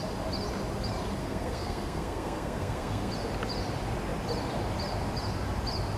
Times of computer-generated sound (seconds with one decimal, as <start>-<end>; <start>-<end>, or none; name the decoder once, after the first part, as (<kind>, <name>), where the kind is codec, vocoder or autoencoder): 1.2-3.1 (codec, SNAC)